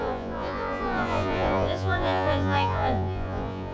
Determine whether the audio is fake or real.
fake